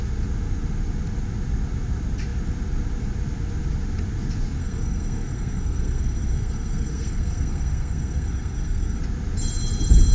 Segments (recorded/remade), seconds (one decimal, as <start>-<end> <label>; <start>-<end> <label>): 0.0-4.6 recorded; 4.6-9.0 remade; 9.0-10.1 recorded